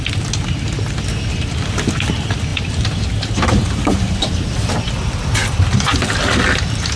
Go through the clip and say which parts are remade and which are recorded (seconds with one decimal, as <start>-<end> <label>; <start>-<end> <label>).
0.0-2.5 recorded; 2.5-4.7 remade; 4.7-7.0 recorded